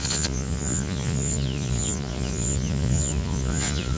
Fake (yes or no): yes